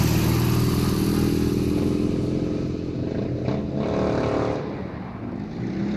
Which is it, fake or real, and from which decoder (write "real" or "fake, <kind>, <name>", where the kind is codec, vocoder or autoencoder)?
real